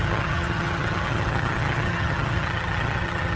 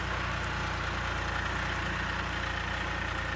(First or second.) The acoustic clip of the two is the second